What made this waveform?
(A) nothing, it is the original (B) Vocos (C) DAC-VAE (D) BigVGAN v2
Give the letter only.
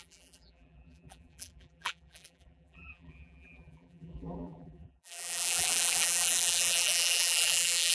D